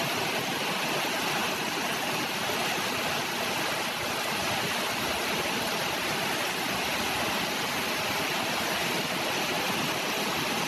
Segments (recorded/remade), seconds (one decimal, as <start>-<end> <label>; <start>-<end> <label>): 0.0-10.7 recorded